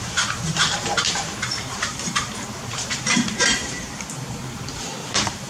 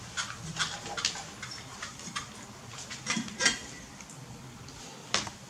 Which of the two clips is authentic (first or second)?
second